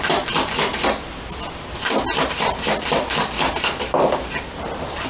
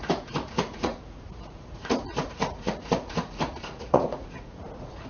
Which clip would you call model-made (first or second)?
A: second